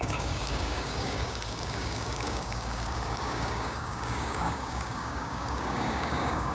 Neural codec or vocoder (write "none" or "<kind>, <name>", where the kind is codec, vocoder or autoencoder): codec, DAC